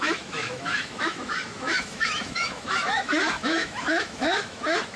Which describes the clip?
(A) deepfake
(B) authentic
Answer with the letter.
A